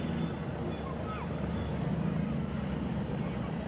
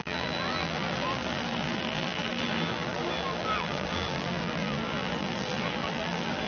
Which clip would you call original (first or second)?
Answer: first